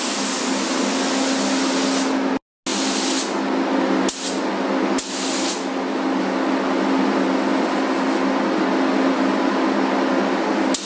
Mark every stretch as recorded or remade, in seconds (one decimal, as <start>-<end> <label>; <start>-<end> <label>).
0.0-10.9 recorded